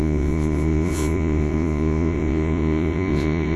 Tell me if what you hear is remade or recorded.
remade